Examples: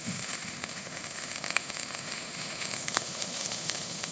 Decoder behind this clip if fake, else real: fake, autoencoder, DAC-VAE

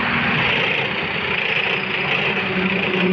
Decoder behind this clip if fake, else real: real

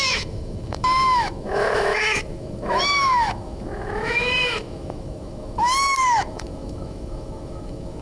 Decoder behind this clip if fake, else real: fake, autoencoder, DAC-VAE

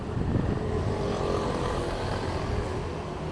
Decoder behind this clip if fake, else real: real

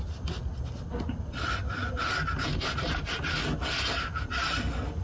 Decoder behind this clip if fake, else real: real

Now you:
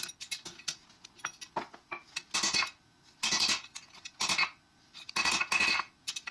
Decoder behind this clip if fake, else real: real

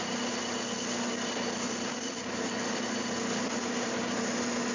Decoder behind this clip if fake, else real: real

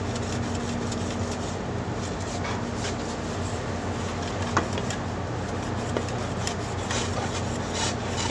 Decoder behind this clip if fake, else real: real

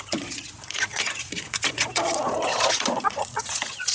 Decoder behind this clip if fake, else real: fake, vocoder, Vocos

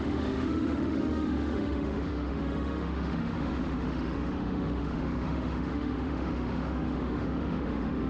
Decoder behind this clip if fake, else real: fake, autoencoder, DAC-VAE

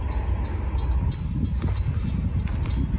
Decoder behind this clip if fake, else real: real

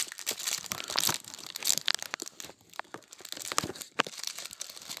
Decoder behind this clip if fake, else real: real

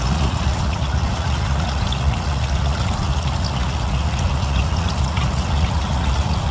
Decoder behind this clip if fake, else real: fake, vocoder, Vocos